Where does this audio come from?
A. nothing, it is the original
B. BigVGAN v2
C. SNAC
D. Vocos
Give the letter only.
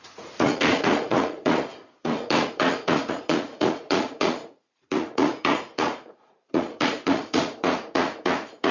D